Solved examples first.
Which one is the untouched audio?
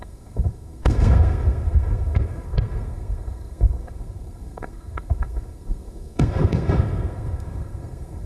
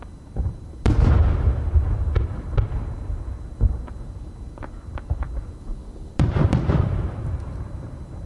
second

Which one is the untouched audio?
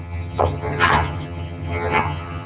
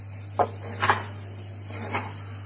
second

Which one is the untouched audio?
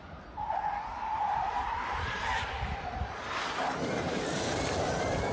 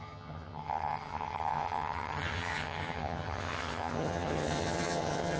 first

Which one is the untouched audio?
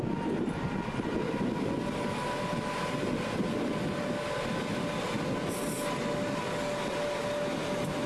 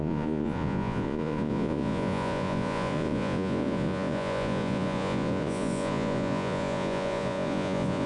first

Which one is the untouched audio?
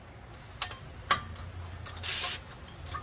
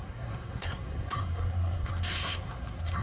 first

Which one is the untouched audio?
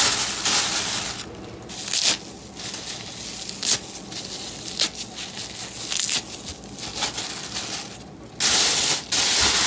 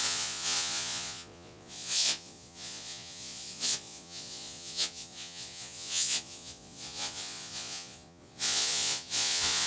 first